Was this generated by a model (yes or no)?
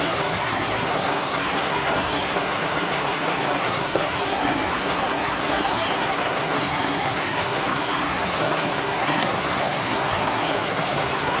yes